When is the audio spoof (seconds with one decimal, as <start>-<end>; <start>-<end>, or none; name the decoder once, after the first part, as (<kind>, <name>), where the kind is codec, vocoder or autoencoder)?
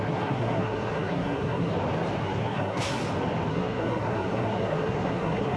0.0-1.7 (codec, SNAC); 2.2-3.0; 3.5-5.6